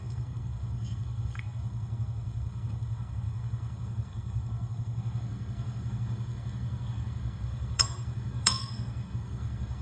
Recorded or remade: remade